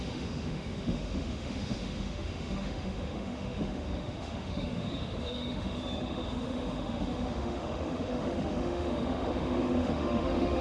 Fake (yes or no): yes